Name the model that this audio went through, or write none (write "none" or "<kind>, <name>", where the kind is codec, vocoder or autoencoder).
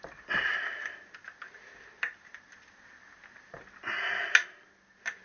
none